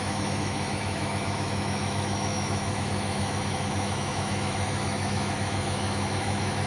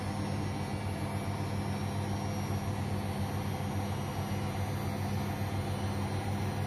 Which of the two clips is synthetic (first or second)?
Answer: first